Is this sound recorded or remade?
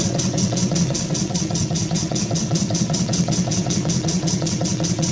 remade